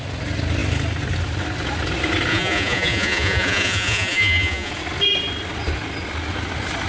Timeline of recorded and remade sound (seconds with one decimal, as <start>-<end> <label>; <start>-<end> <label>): 0.0-2.3 recorded; 2.3-4.7 remade; 4.7-6.9 recorded